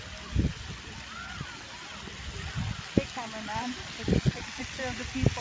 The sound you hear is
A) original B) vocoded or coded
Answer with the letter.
A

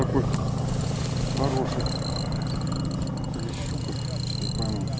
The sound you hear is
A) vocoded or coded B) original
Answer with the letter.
B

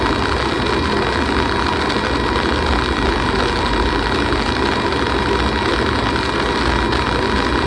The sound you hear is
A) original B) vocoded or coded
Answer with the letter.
A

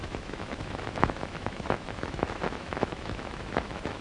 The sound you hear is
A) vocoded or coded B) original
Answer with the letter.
A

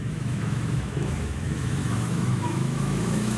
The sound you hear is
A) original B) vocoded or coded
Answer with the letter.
B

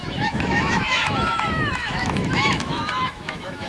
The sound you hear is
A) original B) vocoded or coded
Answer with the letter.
B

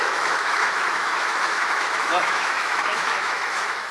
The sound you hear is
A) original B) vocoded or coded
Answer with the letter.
B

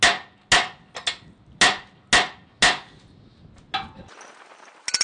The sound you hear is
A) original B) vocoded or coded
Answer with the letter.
A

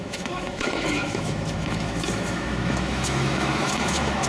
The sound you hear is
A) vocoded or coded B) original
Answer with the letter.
A